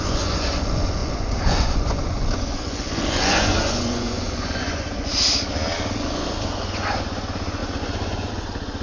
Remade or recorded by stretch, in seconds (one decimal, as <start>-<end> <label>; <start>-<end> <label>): 0.0-5.1 remade; 5.1-6.0 recorded; 6.0-8.8 remade